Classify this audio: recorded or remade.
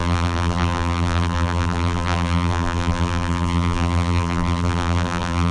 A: remade